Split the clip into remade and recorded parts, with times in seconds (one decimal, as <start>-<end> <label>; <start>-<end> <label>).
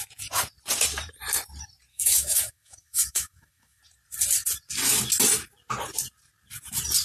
0.0-1.9 recorded; 1.9-3.8 remade; 3.8-7.0 recorded